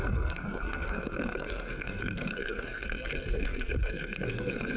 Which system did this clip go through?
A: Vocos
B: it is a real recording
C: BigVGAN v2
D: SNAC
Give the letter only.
D